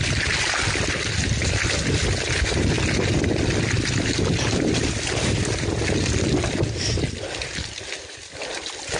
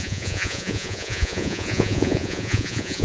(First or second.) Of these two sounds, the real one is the first